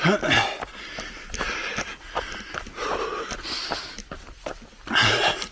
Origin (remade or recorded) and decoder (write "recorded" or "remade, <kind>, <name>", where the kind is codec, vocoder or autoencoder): recorded